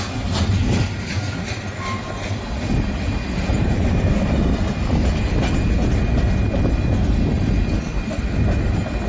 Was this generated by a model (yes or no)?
no